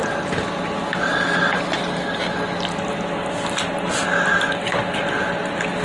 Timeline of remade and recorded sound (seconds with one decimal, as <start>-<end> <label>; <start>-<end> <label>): 0.0-5.8 recorded